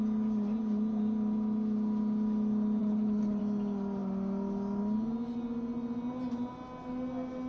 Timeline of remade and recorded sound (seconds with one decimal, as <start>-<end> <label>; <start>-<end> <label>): 0.0-2.8 recorded; 2.8-3.4 remade; 3.4-7.5 recorded